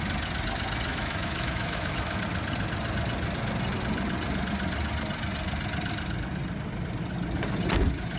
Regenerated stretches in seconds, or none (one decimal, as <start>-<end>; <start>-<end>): 0.9-2.2